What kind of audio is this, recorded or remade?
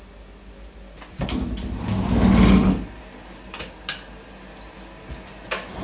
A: recorded